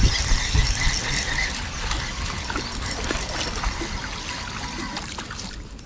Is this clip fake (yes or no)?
no